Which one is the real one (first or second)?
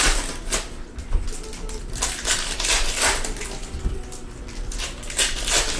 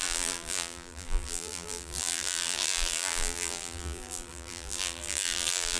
first